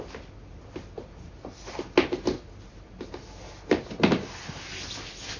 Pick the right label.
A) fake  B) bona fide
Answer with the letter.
B